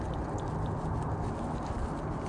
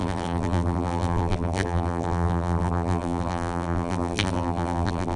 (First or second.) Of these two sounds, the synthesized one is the second